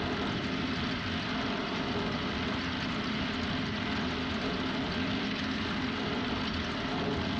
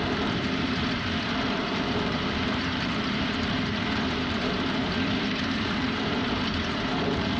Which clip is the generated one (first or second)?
second